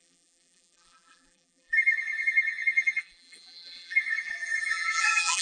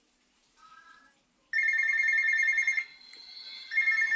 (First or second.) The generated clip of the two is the first